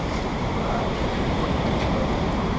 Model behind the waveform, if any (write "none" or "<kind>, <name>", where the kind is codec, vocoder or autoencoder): vocoder, BigVGAN v2